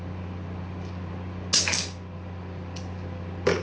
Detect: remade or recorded recorded